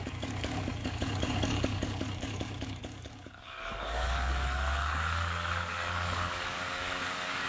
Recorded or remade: remade